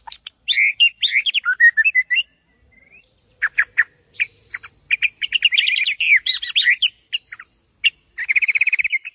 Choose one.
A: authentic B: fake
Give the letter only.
A